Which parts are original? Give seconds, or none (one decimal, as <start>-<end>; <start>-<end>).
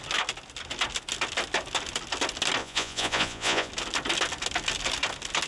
0.0-2.6; 3.7-5.5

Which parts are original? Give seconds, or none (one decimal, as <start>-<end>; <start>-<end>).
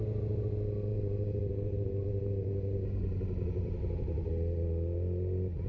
0.0-0.9; 4.3-5.7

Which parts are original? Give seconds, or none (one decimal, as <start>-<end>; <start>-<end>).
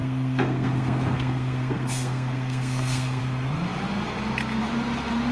3.2-5.3